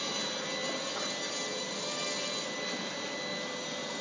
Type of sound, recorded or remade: recorded